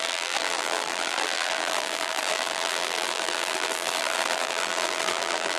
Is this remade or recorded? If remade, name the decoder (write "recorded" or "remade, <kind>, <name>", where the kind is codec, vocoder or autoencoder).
remade, vocoder, BigVGAN v2